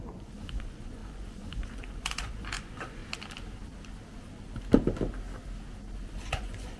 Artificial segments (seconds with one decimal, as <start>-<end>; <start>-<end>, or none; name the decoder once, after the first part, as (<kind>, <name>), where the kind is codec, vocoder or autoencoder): 0.0-3.0 (vocoder, Vocos); 6.3-6.8